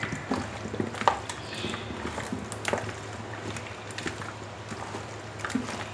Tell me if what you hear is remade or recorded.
recorded